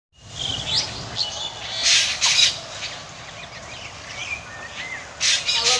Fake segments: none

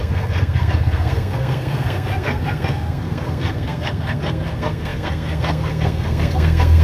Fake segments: 0.0-6.8

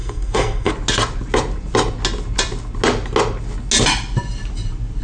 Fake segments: 0.0-0.7

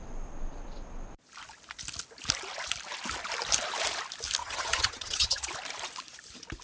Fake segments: 4.4-5.5

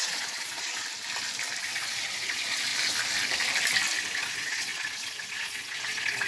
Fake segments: 0.0-0.8; 1.6-2.7; 4.0-6.3

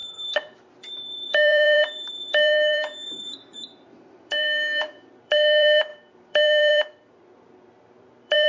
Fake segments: 0.0-8.5

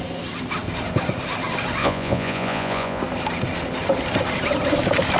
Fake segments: 1.8-3.0